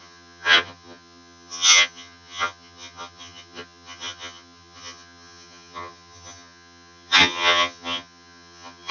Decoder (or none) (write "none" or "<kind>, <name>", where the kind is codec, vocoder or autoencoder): vocoder, HiFi-GAN